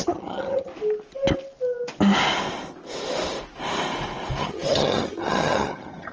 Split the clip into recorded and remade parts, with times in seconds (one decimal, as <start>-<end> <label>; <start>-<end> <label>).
0.0-0.7 remade; 0.7-4.4 recorded; 4.4-6.1 remade